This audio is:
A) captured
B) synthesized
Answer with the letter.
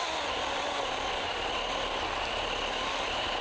A